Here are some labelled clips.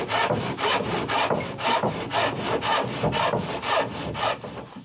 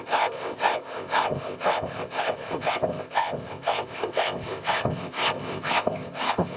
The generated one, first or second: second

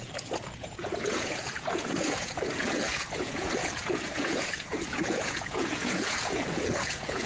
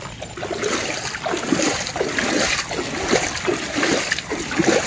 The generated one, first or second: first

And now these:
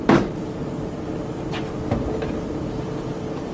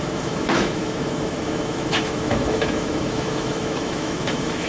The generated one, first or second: second